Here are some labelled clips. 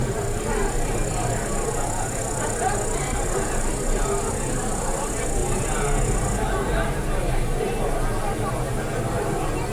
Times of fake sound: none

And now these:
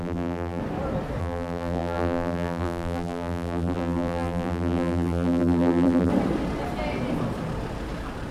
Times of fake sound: 0.0-0.6; 1.2-6.1

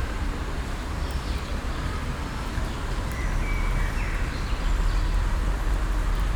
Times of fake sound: 0.0-1.5; 5.3-6.4